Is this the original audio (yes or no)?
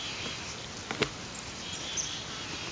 yes